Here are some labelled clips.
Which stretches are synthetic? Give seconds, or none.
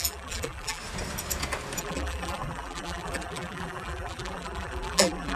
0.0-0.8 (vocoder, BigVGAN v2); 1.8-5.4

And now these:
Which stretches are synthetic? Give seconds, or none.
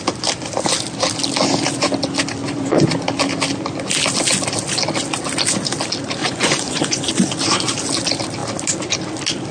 2.4-2.9 (vocoder, Vocos); 6.2-7.1